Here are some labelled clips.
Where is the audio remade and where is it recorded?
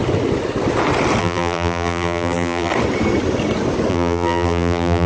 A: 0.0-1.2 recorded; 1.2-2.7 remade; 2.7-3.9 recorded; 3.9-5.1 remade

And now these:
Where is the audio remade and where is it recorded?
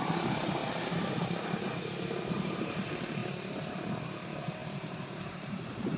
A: 0.0-0.6 remade; 0.6-2.2 recorded; 2.2-6.0 remade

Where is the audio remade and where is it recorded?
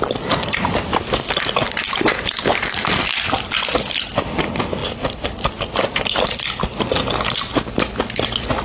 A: 0.0-8.6 recorded